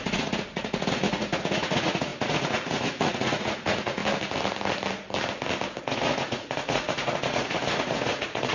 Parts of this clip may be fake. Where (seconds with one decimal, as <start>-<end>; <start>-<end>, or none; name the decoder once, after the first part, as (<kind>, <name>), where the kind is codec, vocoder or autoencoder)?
0.0-4.0 (vocoder, Vocos); 5.8-8.5

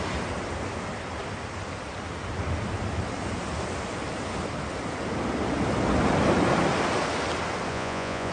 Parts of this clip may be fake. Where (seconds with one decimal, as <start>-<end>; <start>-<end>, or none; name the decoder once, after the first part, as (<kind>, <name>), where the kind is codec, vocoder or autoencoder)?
7.7-8.3 (vocoder, Vocos)

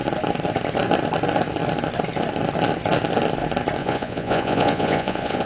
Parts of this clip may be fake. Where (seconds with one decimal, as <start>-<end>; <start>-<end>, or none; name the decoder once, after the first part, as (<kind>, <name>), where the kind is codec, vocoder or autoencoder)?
3.8-5.5 (vocoder, Vocos)

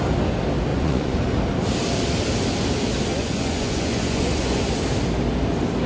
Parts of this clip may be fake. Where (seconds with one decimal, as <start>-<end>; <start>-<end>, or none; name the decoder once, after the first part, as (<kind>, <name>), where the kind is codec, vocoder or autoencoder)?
0.7-1.2 (vocoder, Vocos); 3.1-4.6

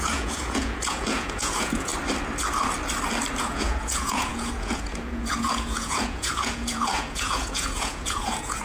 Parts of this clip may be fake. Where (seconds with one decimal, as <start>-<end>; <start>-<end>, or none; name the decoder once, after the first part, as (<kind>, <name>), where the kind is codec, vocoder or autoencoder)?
0.0-1.9 (vocoder, Vocos); 3.4-8.6

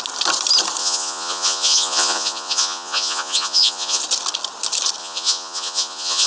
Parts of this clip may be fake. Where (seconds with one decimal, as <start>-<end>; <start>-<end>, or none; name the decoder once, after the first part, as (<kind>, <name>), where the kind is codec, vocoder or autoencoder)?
0.8-4.0 (vocoder, Vocos); 5.0-6.3